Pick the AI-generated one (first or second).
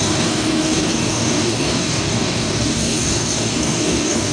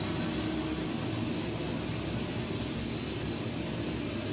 first